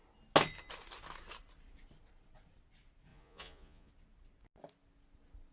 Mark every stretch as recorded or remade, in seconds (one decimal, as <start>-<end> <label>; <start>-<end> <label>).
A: 0.0-3.1 recorded; 3.1-3.9 remade; 3.9-5.5 recorded